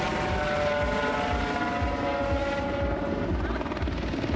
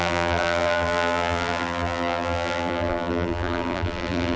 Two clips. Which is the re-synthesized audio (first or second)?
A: second